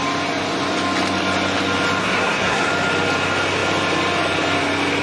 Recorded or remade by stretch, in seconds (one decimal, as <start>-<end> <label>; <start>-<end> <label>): 0.0-2.0 recorded; 2.0-2.7 remade; 2.7-5.0 recorded